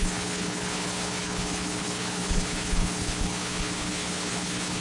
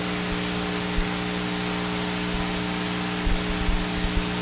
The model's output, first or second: first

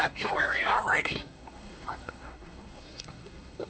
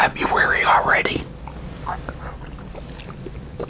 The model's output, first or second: first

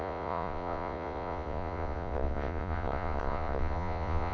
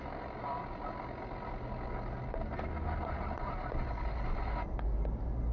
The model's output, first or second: first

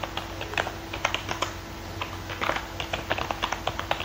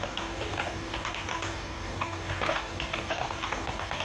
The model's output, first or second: second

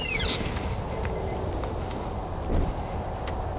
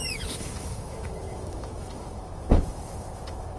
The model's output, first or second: second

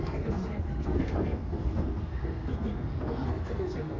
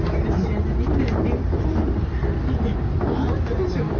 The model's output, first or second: first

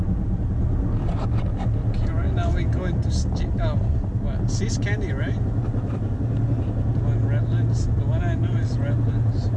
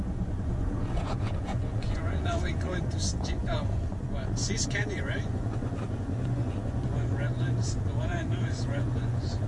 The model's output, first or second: second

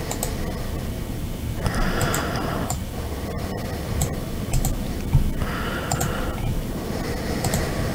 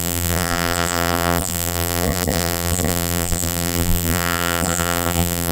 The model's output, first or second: second